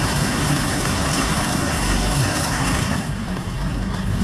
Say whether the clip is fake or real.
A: fake